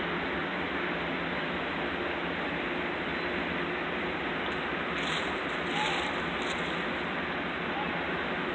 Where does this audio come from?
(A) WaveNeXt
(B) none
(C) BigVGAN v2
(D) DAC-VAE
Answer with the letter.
B